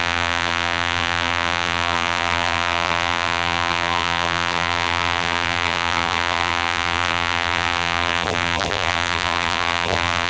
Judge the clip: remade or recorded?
remade